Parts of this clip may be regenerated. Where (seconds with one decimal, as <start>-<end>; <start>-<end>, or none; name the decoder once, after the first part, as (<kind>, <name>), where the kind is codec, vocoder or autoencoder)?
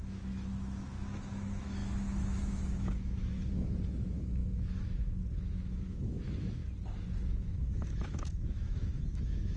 0.0-6.6 (autoencoder, DAC-VAE); 7.4-9.6